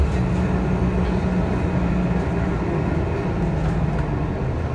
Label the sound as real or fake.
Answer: real